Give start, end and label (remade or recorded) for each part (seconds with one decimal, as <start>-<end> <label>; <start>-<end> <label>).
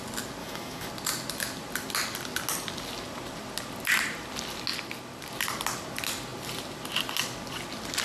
0.0-0.4 recorded; 0.4-0.9 remade; 0.9-8.0 recorded